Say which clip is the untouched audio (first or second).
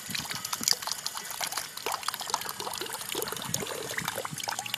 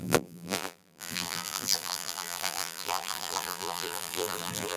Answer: first